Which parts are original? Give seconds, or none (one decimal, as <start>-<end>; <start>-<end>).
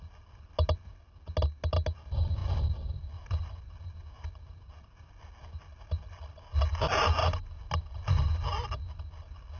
0.0-9.6